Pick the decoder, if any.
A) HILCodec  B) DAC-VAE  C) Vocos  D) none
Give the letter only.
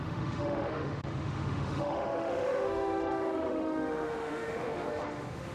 B